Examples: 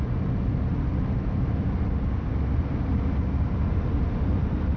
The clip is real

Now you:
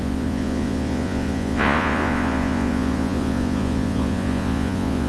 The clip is fake